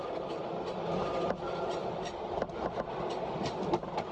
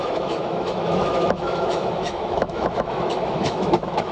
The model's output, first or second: second